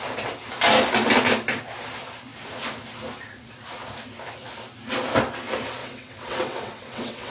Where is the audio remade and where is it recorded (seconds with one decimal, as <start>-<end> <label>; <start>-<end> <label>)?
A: 0.0-5.8 recorded; 5.8-7.3 remade